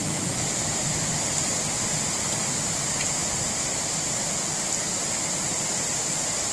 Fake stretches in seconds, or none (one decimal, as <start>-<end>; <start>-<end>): 5.5-6.0